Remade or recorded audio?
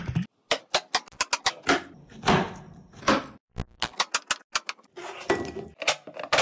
recorded